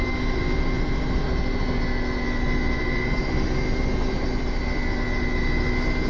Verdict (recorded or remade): recorded